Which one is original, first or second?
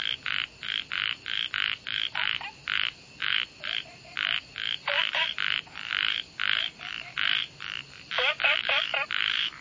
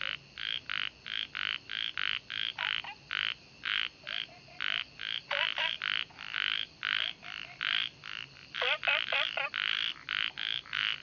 second